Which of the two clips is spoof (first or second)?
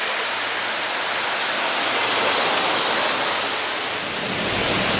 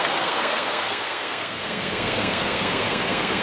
second